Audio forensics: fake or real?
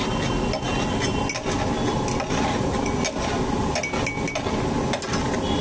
real